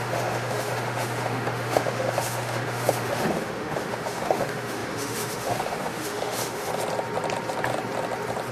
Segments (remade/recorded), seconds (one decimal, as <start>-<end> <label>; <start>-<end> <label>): 0.0-6.7 remade; 6.7-8.5 recorded